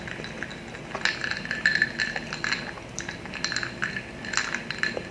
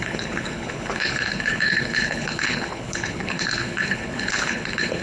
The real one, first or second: first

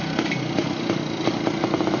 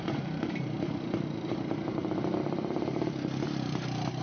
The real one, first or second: first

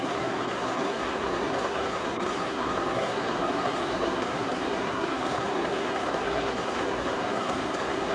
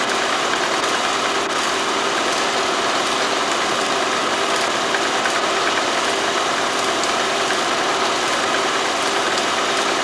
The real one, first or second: second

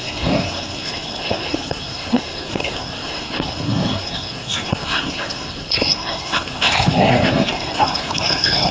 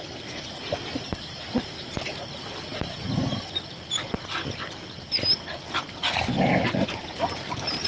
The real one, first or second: second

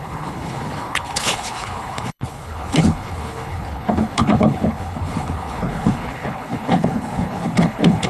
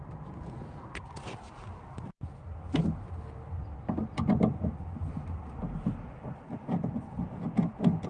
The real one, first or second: second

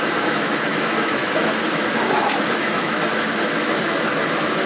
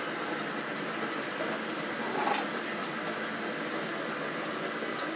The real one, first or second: second